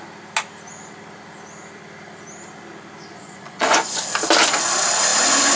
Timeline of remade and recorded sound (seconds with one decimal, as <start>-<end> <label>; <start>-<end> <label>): 0.0-3.1 recorded; 3.1-4.0 remade; 4.0-5.6 recorded